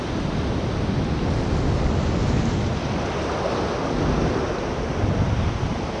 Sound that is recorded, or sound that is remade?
recorded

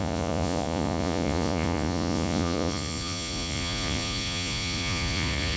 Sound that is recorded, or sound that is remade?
remade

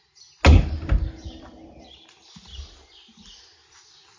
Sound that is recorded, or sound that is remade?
recorded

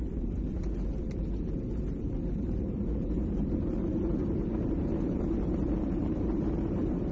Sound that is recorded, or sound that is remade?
remade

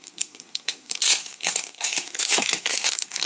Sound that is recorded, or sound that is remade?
remade